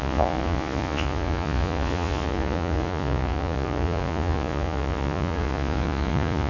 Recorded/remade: remade